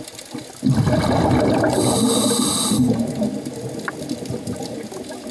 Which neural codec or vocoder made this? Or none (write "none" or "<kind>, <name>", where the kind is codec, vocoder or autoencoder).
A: none